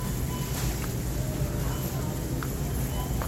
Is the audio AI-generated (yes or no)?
no